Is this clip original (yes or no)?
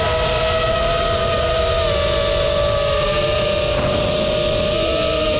yes